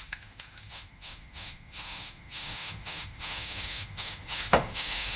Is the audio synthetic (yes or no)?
yes